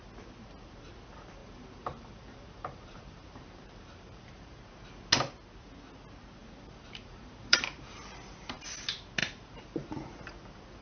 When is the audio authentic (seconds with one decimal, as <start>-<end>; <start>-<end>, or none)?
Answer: 0.0-1.4; 4.6-6.4; 8.6-9.2; 10.3-10.8

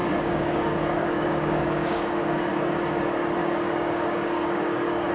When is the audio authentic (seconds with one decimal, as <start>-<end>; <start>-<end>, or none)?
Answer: 2.5-3.4

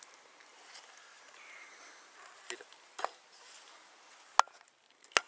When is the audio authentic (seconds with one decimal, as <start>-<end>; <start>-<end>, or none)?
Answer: 0.0-5.3

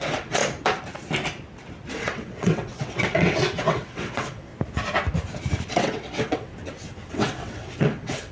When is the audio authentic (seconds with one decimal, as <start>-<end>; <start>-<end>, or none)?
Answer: 0.4-1.9; 4.5-5.7; 6.5-7.1

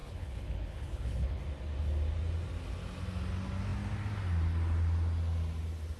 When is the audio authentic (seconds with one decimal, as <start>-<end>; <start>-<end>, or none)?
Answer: 1.4-6.0

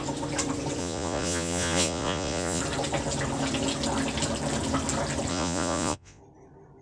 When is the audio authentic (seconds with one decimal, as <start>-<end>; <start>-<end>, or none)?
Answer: 0.0-0.8; 2.6-5.3; 6.2-6.8

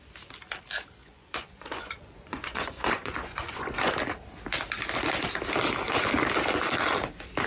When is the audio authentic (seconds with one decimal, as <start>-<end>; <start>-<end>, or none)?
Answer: 0.0-1.0; 3.9-7.5